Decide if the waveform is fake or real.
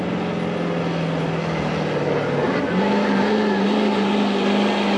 real